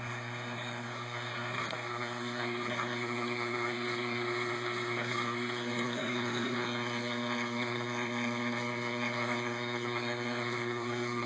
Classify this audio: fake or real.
fake